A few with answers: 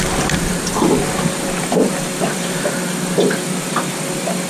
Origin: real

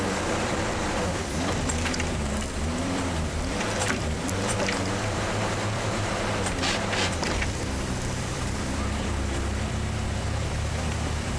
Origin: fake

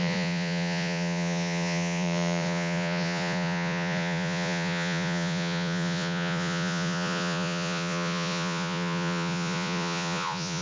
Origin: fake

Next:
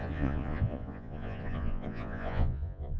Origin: fake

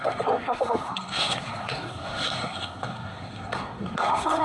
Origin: fake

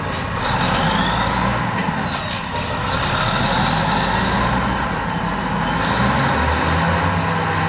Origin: real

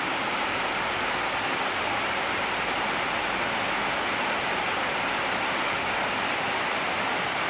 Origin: real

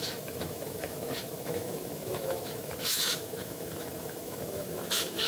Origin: fake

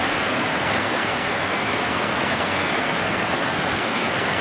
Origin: fake